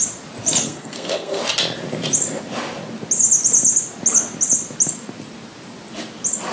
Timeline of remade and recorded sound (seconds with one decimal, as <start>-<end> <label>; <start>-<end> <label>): 0.0-0.6 recorded; 0.6-1.4 remade; 1.4-6.5 recorded